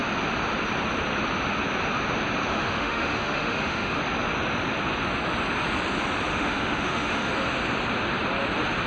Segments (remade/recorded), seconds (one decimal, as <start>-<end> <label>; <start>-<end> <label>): 0.0-2.5 recorded; 2.5-4.0 remade; 4.0-6.3 recorded; 6.3-7.3 remade; 7.3-8.9 recorded